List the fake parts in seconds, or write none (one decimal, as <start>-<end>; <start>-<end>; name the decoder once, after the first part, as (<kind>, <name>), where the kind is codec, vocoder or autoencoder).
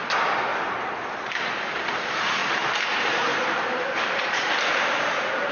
0.5-1.4 (vocoder, BigVGAN v2); 2.4-5.5